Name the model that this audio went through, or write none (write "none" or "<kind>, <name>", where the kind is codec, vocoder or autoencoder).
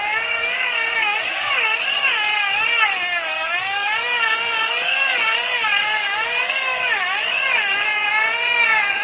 codec, DAC